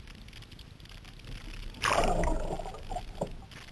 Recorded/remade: recorded